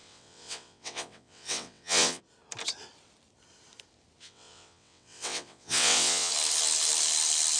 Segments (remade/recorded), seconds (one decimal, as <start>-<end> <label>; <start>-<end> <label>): 0.0-2.2 remade; 2.2-4.2 recorded; 4.2-6.3 remade; 6.3-7.6 recorded